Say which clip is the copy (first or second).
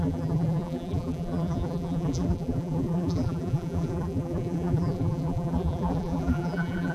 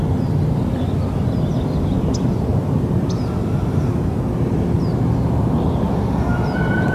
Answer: first